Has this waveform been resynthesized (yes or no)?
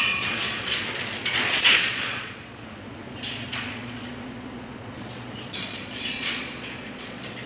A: yes